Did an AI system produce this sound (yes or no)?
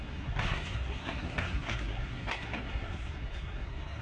yes